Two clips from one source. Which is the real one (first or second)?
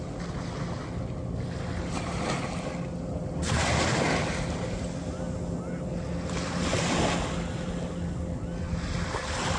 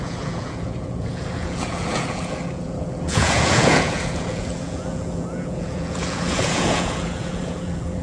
first